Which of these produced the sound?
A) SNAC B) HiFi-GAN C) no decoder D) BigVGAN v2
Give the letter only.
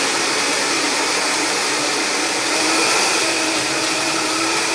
D